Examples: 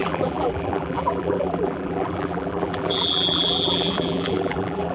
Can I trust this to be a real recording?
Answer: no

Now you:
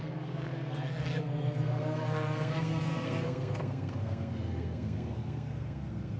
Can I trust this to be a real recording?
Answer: no